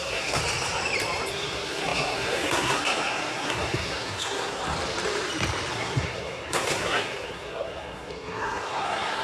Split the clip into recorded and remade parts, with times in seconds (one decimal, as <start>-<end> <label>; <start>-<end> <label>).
0.0-0.4 remade; 0.4-1.3 recorded; 1.3-4.6 remade; 4.6-5.7 recorded; 5.7-9.2 remade